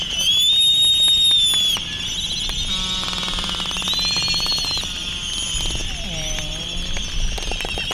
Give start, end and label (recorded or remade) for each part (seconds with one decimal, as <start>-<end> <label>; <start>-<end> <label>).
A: 0.0-7.9 recorded